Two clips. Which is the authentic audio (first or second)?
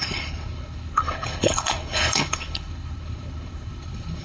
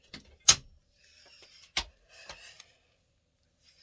second